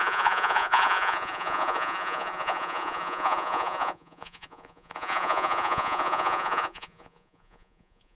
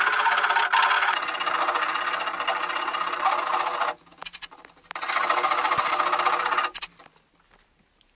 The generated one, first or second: first